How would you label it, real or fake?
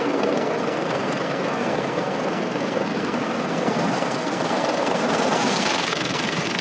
fake